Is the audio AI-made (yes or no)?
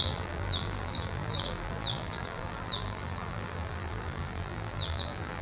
yes